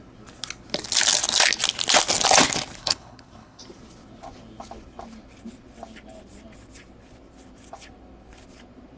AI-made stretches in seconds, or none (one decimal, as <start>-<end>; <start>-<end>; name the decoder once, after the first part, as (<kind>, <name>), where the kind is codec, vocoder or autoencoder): 2.8-3.6 (codec, HILCodec)